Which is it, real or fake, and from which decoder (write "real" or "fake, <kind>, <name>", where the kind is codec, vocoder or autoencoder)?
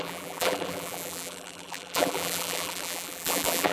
fake, vocoder, BigVGAN v2